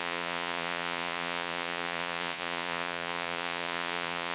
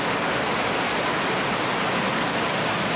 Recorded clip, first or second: second